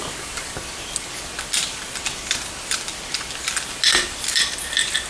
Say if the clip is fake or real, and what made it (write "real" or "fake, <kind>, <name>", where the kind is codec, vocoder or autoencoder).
real